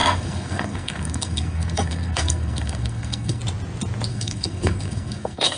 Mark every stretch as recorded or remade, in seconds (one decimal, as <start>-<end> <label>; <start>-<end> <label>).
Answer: 0.0-3.4 remade; 3.4-4.1 recorded; 4.1-5.6 remade